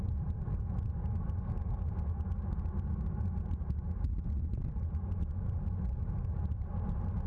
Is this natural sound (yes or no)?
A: yes